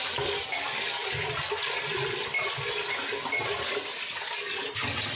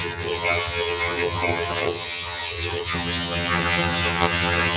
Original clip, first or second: first